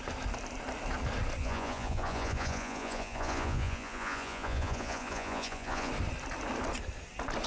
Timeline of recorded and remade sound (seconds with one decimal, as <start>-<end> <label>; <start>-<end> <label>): 0.0-1.4 recorded; 1.4-5.9 remade; 5.9-7.5 recorded

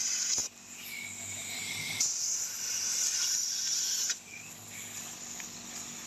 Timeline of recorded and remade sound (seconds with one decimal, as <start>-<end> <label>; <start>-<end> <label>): 0.0-6.1 recorded

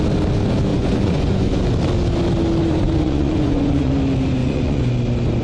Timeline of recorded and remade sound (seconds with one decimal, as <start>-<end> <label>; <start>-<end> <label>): 0.0-0.7 recorded; 0.7-1.6 remade; 1.6-2.6 recorded; 2.6-3.9 remade; 3.9-4.4 recorded; 4.4-4.9 remade; 4.9-5.4 recorded

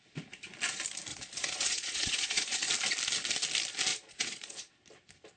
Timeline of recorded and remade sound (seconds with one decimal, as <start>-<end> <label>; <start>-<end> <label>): 0.0-1.1 recorded; 1.1-2.7 remade; 2.7-3.9 recorded; 3.9-4.7 remade; 4.7-5.4 recorded

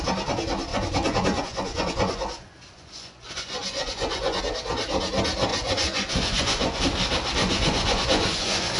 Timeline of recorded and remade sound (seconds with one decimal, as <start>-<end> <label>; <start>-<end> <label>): 0.0-0.7 recorded; 0.7-4.4 remade; 4.4-5.5 recorded; 5.5-6.8 remade; 6.8-7.4 recorded; 7.4-8.8 remade

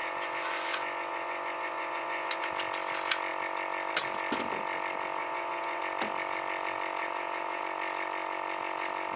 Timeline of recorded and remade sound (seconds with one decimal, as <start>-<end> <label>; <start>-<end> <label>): 0.0-2.5 remade; 2.5-5.2 recorded; 5.2-5.8 remade; 5.8-7.0 recorded; 7.0-7.6 remade; 7.6-9.2 recorded

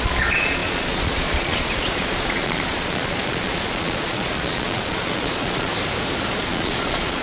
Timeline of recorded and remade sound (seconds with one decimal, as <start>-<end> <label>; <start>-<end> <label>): 0.0-5.7 remade; 5.7-6.4 recorded; 6.4-7.2 remade